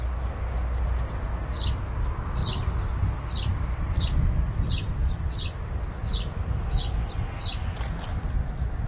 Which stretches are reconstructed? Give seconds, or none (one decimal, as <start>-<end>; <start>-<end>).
none